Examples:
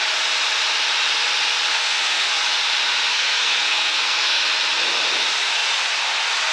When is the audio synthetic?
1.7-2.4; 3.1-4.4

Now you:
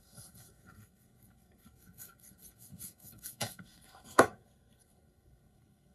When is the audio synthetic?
0.0-5.9

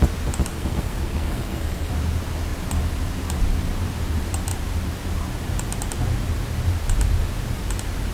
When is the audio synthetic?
0.5-1.9

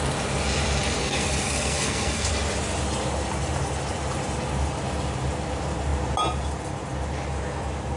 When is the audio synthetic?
1.0-2.3